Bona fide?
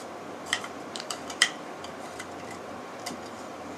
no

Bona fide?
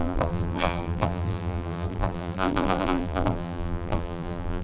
no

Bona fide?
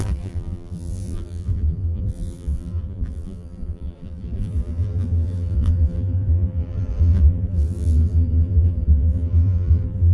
no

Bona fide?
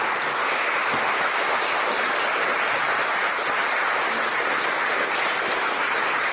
yes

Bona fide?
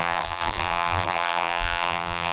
no